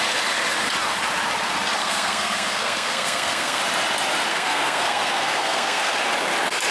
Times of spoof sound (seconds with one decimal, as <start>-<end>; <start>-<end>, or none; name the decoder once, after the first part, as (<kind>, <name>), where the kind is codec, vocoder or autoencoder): 1.8-3.6 (codec, SNAC); 4.3-5.9